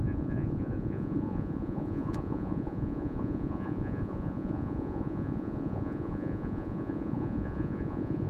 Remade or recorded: remade